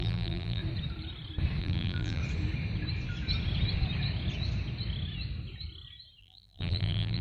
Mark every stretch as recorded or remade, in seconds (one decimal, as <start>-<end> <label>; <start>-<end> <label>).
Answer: 0.0-0.6 remade; 0.6-1.6 recorded; 1.6-2.2 remade; 2.2-6.2 recorded; 6.2-7.2 remade